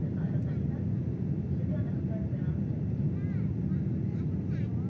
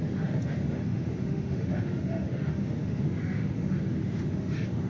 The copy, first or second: second